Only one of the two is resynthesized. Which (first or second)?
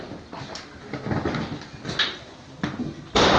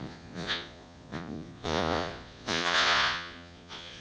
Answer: second